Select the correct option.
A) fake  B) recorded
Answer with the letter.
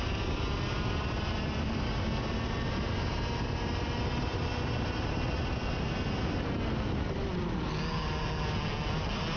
B